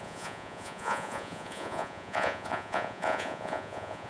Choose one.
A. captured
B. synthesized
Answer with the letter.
B